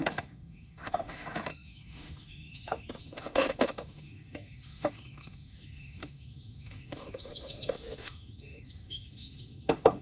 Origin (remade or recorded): remade